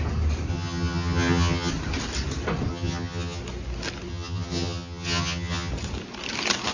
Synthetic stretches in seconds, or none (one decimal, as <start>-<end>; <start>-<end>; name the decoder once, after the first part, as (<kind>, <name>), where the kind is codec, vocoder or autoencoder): 0.5-1.7 (vocoder, HiFi-GAN); 2.7-3.4; 4.1-5.7